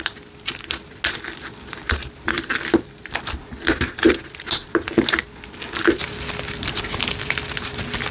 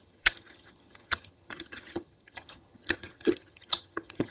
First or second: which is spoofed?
second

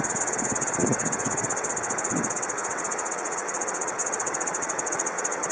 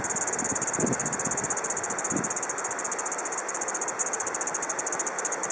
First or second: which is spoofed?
first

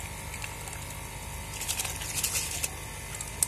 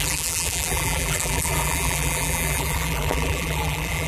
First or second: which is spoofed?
second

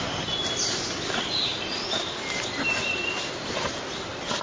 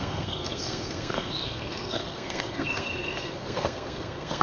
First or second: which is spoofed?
second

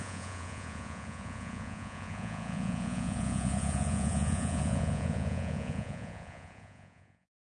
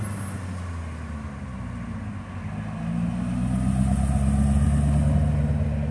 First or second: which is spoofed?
first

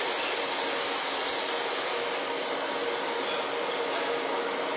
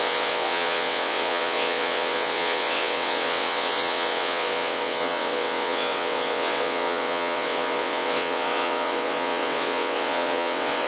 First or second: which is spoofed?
second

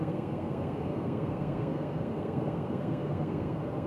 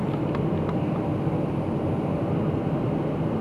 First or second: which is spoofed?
first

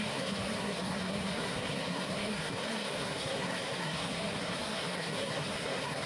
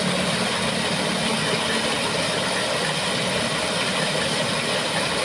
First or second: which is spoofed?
first